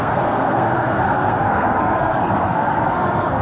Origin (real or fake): fake